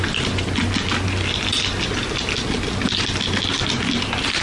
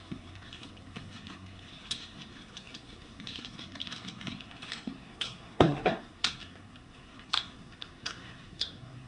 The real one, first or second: first